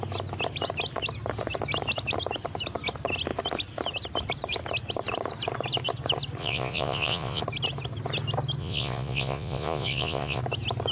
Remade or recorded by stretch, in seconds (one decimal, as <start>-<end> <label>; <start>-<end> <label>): 0.0-6.4 recorded; 6.4-7.4 remade; 7.4-8.6 recorded; 8.6-10.4 remade; 10.4-10.9 recorded